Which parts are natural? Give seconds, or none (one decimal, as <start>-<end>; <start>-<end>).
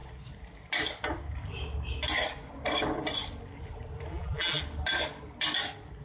0.0-4.1; 4.6-6.0